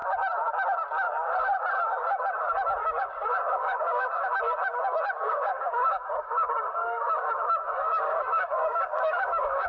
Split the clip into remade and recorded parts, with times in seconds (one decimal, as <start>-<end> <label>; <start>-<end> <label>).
0.0-2.8 recorded; 2.8-4.4 remade; 4.4-5.2 recorded; 5.2-9.7 remade